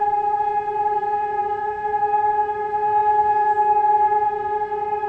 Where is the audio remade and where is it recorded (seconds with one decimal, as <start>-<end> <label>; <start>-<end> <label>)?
0.0-1.4 recorded; 1.4-2.0 remade; 2.0-3.0 recorded; 3.0-3.8 remade; 3.8-5.1 recorded